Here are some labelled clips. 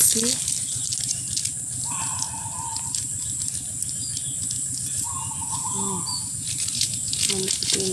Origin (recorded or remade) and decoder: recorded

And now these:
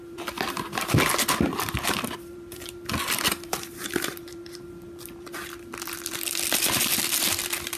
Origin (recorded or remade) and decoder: remade, vocoder, BigVGAN v2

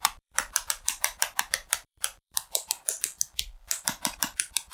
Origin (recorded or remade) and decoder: remade, vocoder, BigVGAN v2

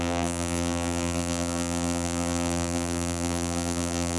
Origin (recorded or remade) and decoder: remade, vocoder, BigVGAN v2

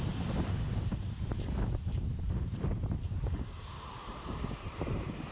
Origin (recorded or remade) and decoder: remade, vocoder, BigVGAN v2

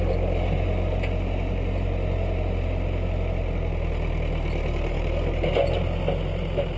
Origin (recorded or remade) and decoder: recorded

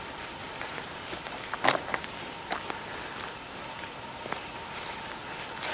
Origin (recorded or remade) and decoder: recorded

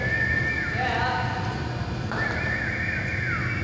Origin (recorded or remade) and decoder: recorded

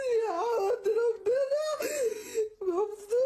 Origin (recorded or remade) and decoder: recorded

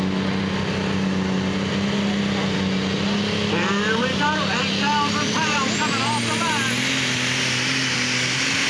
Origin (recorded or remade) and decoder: recorded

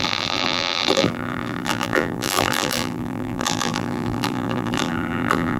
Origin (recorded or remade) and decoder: remade, vocoder, BigVGAN v2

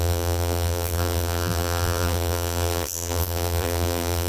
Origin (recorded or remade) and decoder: remade, vocoder, BigVGAN v2